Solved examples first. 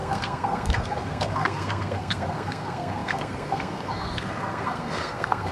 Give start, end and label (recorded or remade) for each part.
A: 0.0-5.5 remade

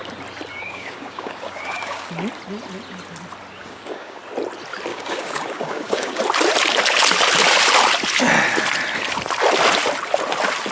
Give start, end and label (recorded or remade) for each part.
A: 0.0-0.5 recorded; 0.5-2.1 remade; 2.1-3.6 recorded; 3.6-4.2 remade; 4.2-4.9 recorded; 4.9-6.2 remade; 6.2-10.7 recorded